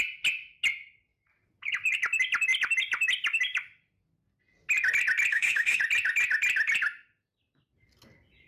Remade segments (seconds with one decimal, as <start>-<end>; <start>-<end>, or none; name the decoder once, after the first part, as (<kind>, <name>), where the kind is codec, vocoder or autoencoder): 5.3-5.8 (autoencoder, DAC-VAE)